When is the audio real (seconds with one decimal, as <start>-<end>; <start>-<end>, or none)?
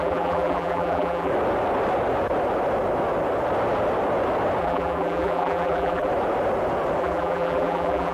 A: 1.3-4.6; 6.1-7.0